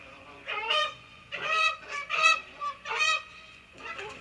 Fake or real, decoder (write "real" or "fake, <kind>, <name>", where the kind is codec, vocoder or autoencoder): fake, vocoder, Vocos